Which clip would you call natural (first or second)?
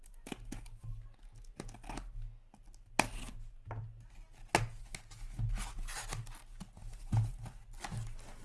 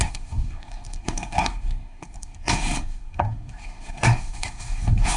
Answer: first